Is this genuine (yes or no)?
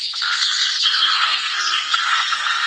no